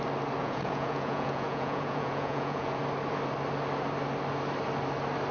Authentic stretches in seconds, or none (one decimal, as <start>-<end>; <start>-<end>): 0.0-0.4; 2.8-5.3